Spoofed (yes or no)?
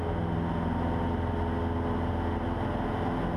no